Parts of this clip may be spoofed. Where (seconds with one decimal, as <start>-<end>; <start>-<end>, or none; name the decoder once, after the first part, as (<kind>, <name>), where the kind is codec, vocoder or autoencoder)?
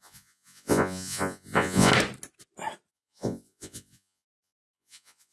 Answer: 0.0-1.9 (vocoder, Vocos); 2.9-5.3